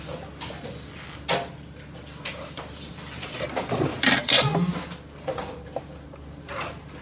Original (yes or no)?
yes